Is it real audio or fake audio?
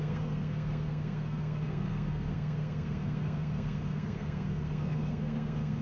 fake